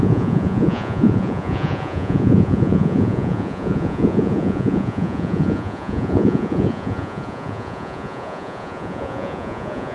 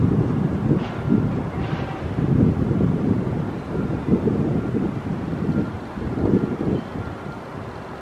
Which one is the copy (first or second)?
first